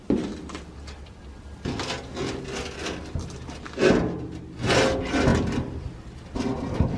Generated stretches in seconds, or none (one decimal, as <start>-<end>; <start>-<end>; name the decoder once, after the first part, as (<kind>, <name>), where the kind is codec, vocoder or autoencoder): none

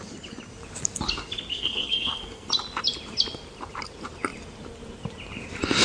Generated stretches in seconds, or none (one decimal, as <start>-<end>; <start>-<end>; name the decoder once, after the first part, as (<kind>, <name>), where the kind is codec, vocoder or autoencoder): 1.5-2.5 (codec, SNAC)